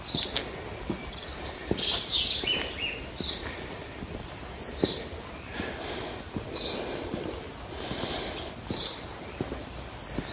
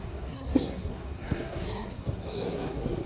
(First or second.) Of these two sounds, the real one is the first